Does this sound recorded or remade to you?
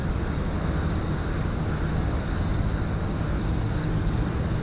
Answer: recorded